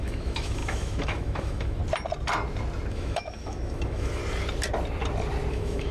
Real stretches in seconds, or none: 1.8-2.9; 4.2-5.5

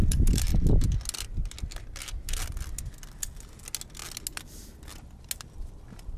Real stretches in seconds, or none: 0.0-6.2

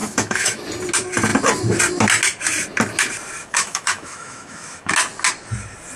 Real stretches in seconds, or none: 0.6-3.4; 4.9-6.0

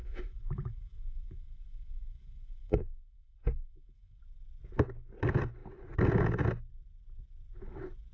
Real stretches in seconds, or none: 4.2-8.1

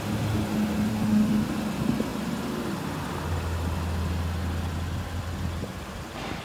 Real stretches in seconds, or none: 0.0-0.9; 1.5-6.4